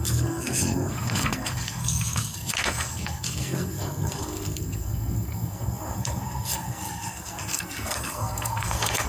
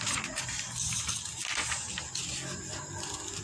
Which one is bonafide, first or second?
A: second